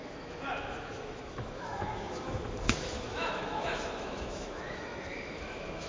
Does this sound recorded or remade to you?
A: remade